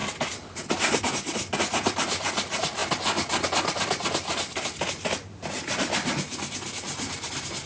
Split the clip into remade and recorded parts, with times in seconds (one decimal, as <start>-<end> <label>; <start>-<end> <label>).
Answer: 0.0-7.7 recorded